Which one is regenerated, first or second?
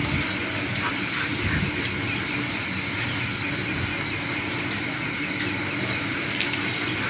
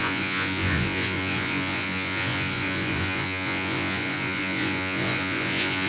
second